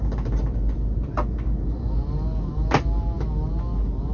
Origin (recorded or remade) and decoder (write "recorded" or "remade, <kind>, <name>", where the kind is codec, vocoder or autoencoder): recorded